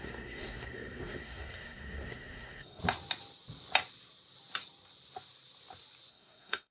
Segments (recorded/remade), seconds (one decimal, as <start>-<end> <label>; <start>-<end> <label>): 0.0-2.8 remade; 2.8-6.1 recorded; 6.1-6.7 remade